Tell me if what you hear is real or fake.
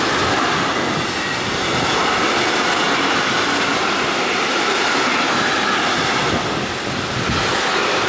real